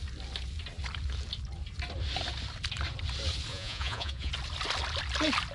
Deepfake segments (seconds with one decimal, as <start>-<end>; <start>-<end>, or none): 3.5-4.3